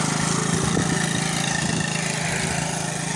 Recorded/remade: recorded